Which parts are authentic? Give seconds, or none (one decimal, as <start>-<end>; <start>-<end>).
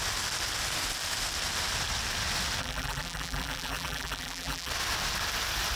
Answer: 0.0-2.6; 4.7-5.8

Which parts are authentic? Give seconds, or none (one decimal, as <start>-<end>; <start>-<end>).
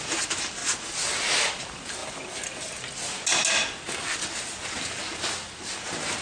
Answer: 0.0-6.2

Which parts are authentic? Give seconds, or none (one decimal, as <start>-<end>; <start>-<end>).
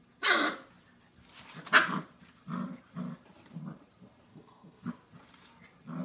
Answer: 0.0-4.3; 4.9-6.0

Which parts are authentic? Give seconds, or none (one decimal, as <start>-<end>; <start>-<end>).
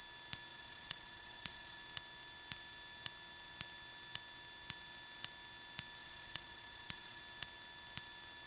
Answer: 0.0-0.5; 1.8-6.0; 7.2-8.5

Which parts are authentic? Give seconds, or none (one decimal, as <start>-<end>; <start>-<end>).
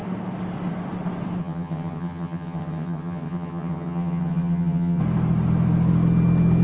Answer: 0.0-1.4; 5.0-6.6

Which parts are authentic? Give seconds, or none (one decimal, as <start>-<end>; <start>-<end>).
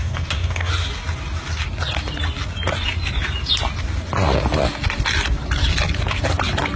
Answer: 0.7-6.8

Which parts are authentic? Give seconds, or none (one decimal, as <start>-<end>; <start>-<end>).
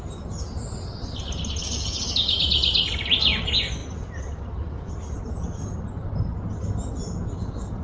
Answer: 0.0-1.6; 2.4-7.8